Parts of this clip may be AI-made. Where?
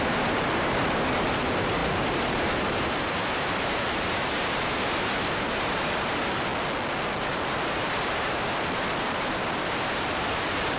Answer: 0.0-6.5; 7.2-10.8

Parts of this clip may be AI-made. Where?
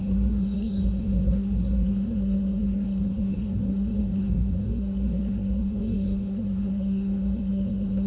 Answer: 0.0-8.1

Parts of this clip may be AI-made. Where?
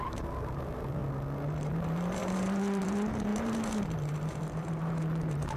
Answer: 0.0-1.0; 1.7-5.6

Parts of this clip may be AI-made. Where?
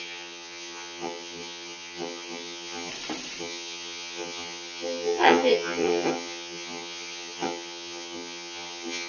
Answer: 0.0-2.9; 3.4-9.1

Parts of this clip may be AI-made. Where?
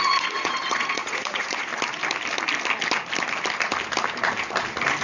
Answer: 0.0-1.7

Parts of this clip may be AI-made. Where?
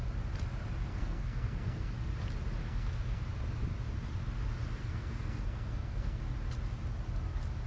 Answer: 0.9-1.9; 2.6-3.2; 4.8-6.2